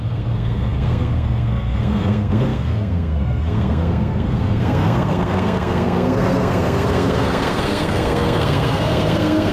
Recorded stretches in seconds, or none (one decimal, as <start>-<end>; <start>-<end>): none